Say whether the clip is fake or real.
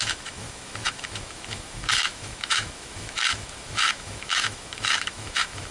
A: fake